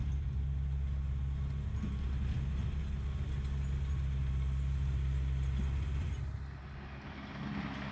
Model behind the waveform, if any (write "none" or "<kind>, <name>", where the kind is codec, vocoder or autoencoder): none